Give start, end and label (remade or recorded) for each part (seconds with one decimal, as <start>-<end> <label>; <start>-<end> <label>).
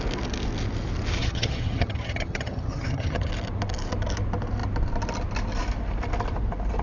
0.0-1.2 recorded; 1.2-3.3 remade; 3.3-6.8 recorded